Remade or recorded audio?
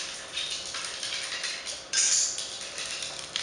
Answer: remade